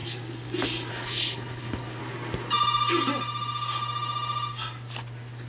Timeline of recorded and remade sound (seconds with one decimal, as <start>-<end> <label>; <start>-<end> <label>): 0.0-0.9 recorded; 0.9-2.0 remade; 2.0-5.5 recorded